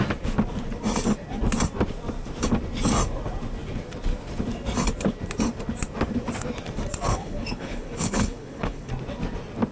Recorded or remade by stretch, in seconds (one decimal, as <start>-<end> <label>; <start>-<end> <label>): 0.0-7.1 recorded; 7.1-8.9 remade; 8.9-9.7 recorded

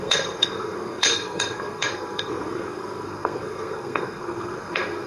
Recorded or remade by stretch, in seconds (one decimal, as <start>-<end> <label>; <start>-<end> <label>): 0.0-5.1 remade